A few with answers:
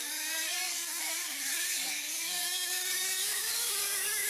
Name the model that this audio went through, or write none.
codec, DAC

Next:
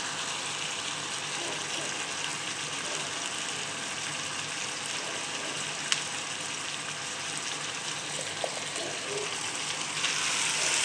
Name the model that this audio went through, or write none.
none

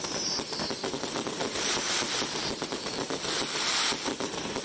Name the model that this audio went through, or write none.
none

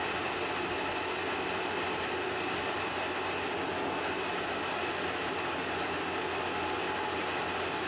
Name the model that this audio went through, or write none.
none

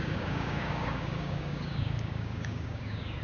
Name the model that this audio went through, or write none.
codec, DAC